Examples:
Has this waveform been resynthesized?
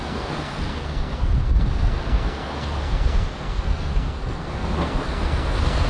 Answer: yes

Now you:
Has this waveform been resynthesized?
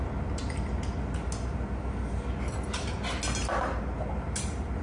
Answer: no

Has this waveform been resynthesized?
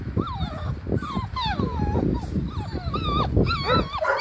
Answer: no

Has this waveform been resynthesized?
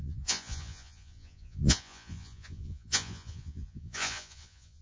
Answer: yes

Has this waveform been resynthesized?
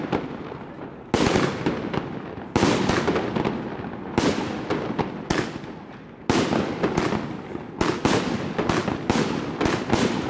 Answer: no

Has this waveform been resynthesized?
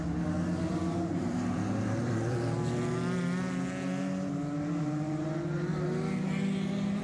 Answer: no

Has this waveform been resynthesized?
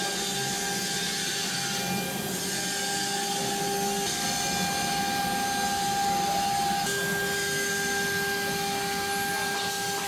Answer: no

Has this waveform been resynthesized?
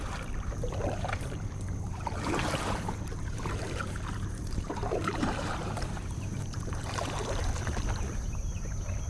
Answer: yes